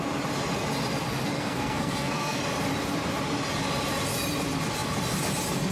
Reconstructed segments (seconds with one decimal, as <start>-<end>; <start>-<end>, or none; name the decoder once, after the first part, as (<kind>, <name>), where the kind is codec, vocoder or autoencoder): 1.2-2.4 (codec, SNAC)